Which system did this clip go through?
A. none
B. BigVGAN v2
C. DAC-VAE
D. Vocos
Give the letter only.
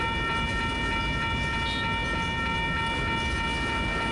A